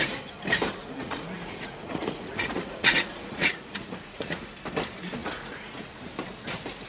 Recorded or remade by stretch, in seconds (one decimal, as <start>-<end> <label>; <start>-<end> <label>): 0.0-0.8 recorded; 0.8-4.4 remade; 4.4-5.2 recorded; 5.2-5.9 remade; 5.9-6.9 recorded